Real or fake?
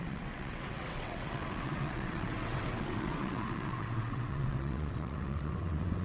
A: fake